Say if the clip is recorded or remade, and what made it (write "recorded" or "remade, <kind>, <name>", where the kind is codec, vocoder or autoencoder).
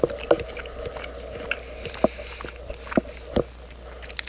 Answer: recorded